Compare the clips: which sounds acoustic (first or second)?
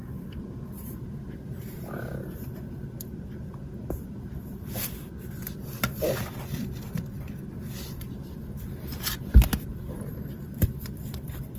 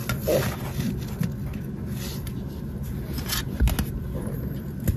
second